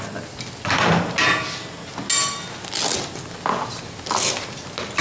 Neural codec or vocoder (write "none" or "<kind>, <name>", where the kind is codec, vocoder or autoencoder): none